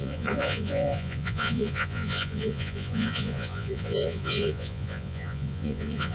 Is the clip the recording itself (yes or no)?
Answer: no